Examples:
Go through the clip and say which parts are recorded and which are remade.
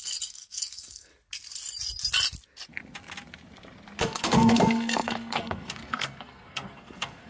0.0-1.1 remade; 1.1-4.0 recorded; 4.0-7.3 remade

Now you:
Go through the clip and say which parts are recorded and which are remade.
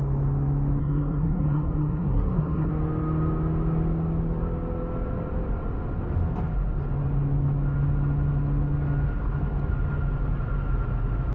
0.0-0.8 recorded; 0.8-2.7 remade; 2.7-11.3 recorded